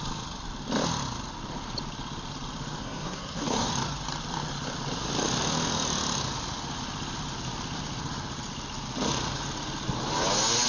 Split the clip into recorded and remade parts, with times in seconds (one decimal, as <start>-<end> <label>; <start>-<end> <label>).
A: 0.0-2.8 recorded; 2.8-3.7 remade; 3.7-10.7 recorded